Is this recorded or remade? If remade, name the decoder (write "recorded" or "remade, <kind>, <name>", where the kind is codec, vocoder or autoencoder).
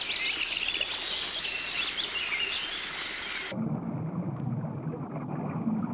recorded